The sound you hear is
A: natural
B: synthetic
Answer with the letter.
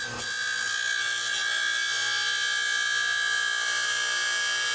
A